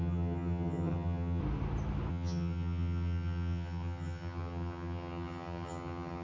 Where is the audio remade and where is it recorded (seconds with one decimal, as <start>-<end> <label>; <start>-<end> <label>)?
0.0-1.4 remade; 1.4-2.1 recorded; 2.1-6.2 remade